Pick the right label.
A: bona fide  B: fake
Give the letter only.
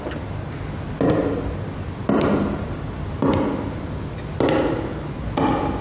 A